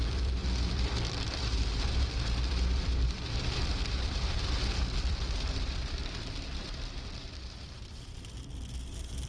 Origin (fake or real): fake